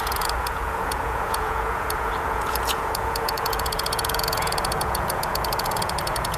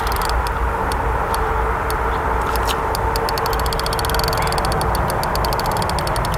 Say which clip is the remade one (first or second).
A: first